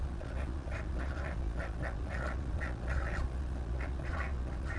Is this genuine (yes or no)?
no